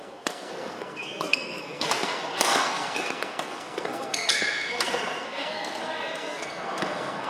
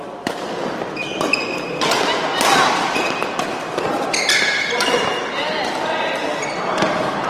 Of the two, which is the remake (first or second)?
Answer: first